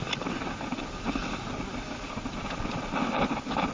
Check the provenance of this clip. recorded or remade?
recorded